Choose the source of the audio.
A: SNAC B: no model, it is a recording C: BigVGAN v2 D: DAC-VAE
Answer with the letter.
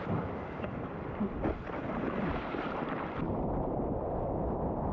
C